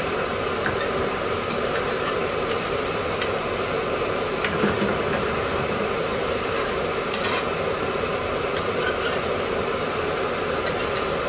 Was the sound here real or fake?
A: real